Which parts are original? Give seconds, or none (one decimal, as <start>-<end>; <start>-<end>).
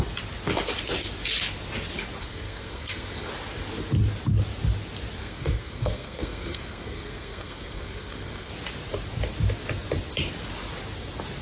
0.0-2.2; 3.3-5.2; 8.5-11.4